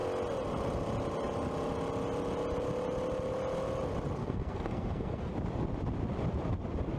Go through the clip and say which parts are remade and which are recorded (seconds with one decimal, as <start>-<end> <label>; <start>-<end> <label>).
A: 0.0-4.2 recorded; 4.2-5.3 remade; 5.3-7.0 recorded